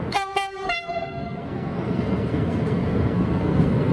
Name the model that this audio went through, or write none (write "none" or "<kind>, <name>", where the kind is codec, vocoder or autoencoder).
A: codec, SNAC